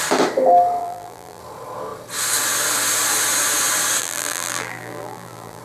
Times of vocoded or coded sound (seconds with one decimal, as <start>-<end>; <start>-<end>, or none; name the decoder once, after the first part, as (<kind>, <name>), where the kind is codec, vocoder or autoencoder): 0.8-1.4 (vocoder, BigVGAN v2); 4.0-5.6